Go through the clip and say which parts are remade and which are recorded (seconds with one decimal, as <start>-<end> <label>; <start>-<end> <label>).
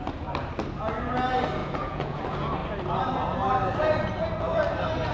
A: 0.0-1.6 recorded; 1.6-2.2 remade; 2.2-5.1 recorded